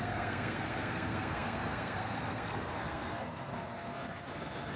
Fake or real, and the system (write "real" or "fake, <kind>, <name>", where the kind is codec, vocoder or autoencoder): fake, codec, SNAC